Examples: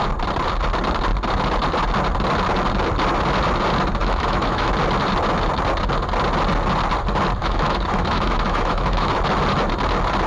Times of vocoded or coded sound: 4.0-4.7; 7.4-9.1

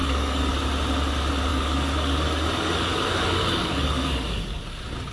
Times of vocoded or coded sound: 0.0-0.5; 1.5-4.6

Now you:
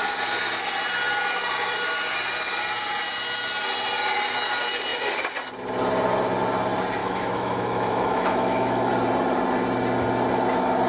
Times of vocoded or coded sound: 7.0-8.9

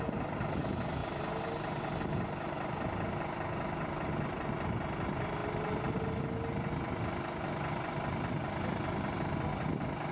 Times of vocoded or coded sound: none

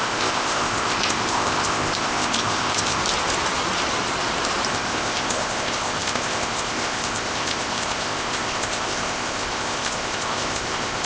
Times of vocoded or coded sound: 0.0-3.0; 4.7-11.1